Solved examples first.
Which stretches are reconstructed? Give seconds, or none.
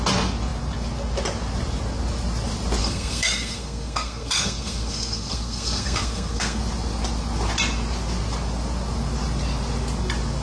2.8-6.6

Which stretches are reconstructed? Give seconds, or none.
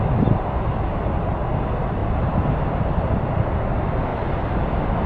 none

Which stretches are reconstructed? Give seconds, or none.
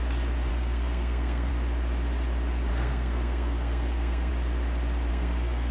0.5-1.5; 2.7-4.3; 5.1-5.7